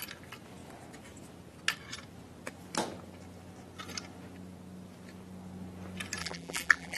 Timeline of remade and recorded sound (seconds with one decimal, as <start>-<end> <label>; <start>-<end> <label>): 0.0-6.2 recorded; 6.2-7.0 remade

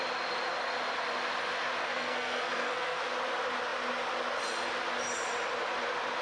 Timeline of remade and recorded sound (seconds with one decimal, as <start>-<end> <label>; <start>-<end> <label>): 0.0-1.8 recorded; 1.8-3.0 remade; 3.0-6.2 recorded

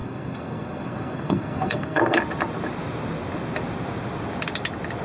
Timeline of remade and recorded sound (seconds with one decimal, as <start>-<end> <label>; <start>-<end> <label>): 0.0-2.2 remade; 2.2-5.0 recorded

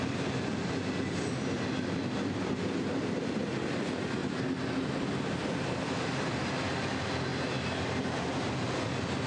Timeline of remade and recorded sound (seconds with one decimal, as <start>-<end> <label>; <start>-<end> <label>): 0.0-7.3 recorded; 7.3-8.7 remade; 8.7-9.3 recorded

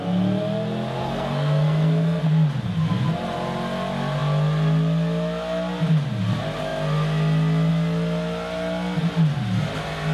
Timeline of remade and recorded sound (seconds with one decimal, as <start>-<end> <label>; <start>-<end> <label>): 0.0-1.0 recorded; 1.0-2.2 remade; 2.2-10.1 recorded

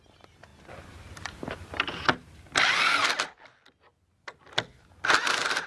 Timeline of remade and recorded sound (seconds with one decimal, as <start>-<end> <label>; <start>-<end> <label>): 0.0-0.5 recorded; 0.5-2.5 remade; 2.5-3.0 recorded; 3.0-3.8 remade; 3.8-5.7 recorded

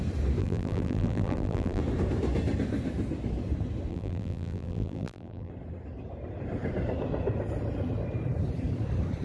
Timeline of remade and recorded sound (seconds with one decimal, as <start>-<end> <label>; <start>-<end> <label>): 0.0-0.4 recorded; 0.4-1.8 remade; 1.8-3.9 recorded; 3.9-5.5 remade; 5.5-9.2 recorded